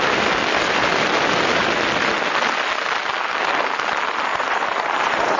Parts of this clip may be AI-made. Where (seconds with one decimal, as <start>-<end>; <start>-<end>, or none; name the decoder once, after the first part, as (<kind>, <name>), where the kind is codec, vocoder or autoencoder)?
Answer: 4.3-5.4 (vocoder, BigVGAN v2)